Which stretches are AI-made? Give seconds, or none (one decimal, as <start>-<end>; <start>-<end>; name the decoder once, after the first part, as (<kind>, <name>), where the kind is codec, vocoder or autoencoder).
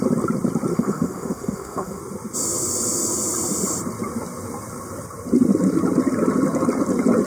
0.7-2.0 (autoencoder, DAC-VAE)